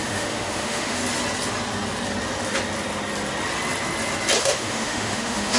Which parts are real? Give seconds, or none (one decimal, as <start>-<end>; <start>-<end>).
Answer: 1.0-4.4